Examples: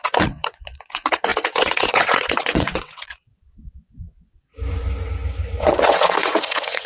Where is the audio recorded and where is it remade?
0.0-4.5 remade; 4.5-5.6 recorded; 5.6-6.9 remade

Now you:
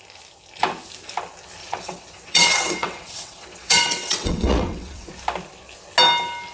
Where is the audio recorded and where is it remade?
0.0-1.6 recorded; 1.6-5.1 remade; 5.1-6.5 recorded

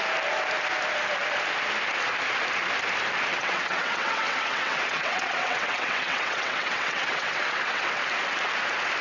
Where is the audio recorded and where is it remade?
0.0-3.3 recorded; 3.3-8.0 remade; 8.0-9.0 recorded